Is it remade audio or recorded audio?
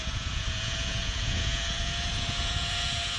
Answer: remade